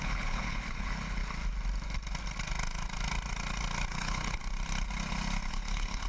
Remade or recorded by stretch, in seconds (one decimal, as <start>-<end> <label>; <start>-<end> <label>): 0.0-1.2 remade; 1.2-3.9 recorded; 3.9-4.4 remade; 4.4-5.5 recorded; 5.5-6.1 remade

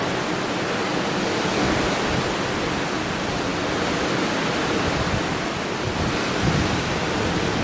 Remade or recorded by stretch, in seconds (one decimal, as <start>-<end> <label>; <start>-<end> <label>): 0.0-7.6 recorded